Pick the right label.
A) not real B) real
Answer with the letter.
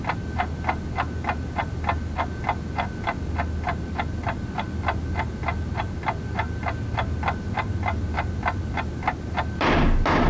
B